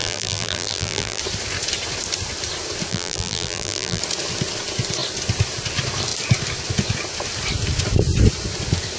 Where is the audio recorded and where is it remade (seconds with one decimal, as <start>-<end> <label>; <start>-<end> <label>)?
0.0-1.2 remade; 1.2-2.9 recorded; 2.9-4.0 remade; 4.0-9.0 recorded